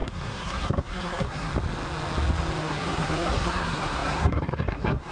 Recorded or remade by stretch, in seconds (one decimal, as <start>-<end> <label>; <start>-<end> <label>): 0.0-1.5 remade; 1.5-2.6 recorded; 2.6-5.1 remade

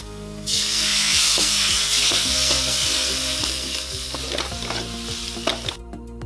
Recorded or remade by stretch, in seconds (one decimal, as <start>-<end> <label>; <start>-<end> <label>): 0.0-4.2 remade; 4.2-6.3 recorded

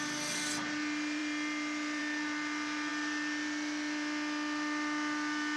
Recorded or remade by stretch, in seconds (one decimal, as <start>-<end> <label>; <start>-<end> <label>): 0.0-5.6 recorded

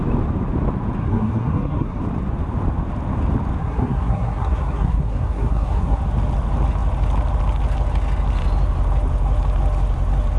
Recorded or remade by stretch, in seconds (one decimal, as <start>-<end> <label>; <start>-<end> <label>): 0.0-1.0 recorded; 1.0-2.0 remade; 2.0-3.6 recorded; 3.6-6.0 remade; 6.0-10.4 recorded